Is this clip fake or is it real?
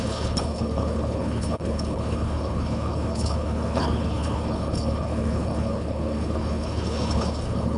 fake